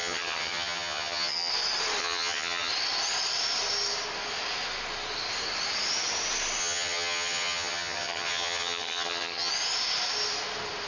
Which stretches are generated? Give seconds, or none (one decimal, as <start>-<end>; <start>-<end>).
0.0-1.5; 2.0-2.7; 6.6-9.5